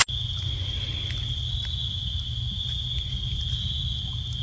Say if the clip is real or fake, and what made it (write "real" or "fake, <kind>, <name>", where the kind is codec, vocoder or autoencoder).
real